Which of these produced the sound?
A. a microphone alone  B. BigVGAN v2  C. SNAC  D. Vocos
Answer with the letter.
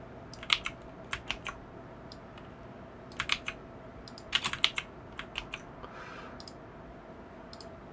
A